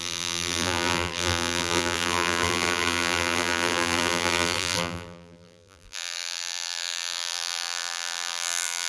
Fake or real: fake